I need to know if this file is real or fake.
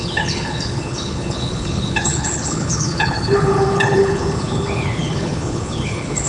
fake